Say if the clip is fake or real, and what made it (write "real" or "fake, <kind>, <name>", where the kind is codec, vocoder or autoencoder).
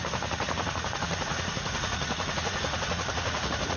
fake, vocoder, Vocos